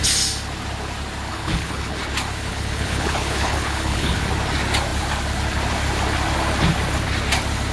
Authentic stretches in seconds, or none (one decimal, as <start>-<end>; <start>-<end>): 0.0-1.3; 2.0-2.5; 4.2-7.7